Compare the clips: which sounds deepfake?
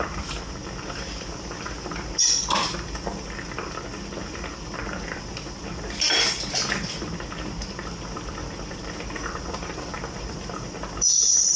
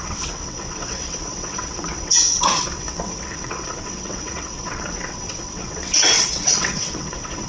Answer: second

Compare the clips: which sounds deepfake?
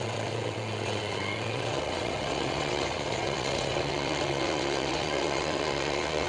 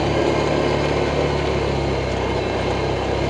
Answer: first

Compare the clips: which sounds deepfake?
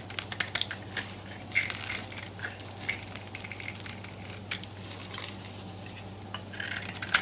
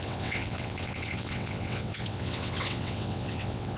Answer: second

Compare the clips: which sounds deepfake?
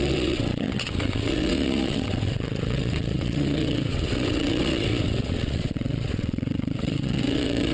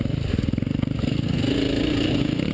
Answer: first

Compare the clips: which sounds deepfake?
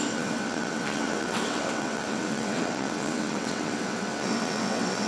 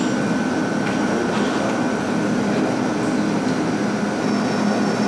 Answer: first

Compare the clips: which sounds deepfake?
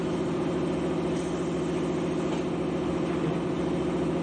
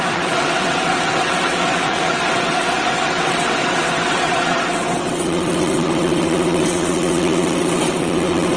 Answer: second